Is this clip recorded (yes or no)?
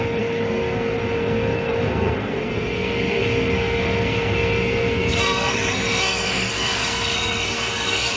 no